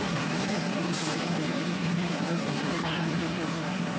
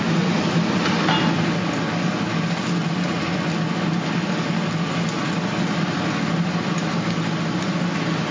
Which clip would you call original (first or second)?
second